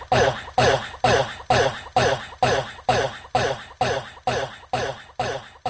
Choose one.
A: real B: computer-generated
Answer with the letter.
A